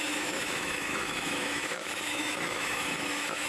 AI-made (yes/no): yes